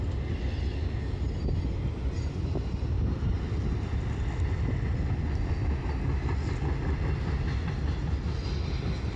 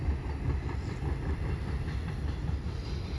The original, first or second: first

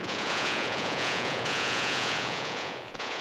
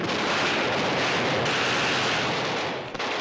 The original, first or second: second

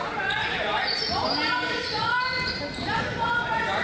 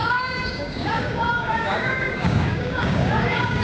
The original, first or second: first